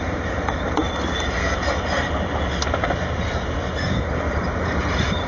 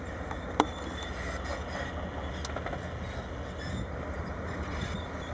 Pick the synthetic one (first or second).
first